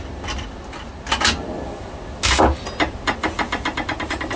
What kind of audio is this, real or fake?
real